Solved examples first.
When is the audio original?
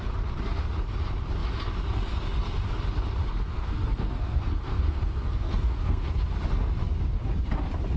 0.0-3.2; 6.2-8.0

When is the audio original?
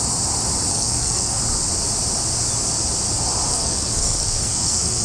0.0-0.7; 1.4-3.5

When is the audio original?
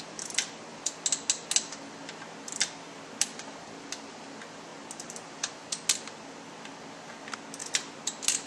0.0-8.5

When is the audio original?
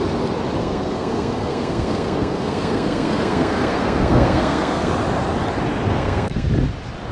0.0-0.6; 4.9-5.9; 6.5-7.1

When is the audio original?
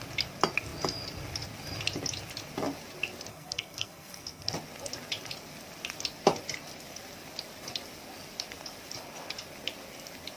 0.0-3.3; 4.5-10.4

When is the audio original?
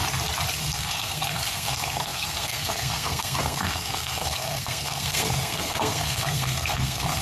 0.0-0.6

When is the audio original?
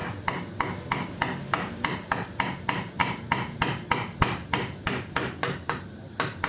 0.0-6.5